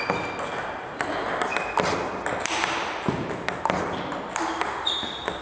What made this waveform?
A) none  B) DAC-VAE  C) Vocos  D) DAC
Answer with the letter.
A